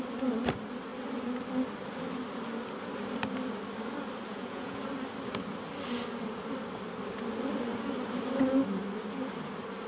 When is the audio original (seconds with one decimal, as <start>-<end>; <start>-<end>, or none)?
0.0-4.3; 4.8-9.9

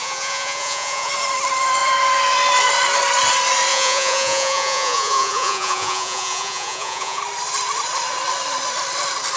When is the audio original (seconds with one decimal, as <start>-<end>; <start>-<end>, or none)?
1.1-3.7; 7.2-9.4